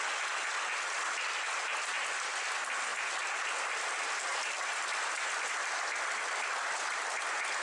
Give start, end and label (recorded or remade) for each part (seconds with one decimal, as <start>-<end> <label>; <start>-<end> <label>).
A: 0.0-4.3 recorded; 4.3-6.6 remade; 6.6-7.6 recorded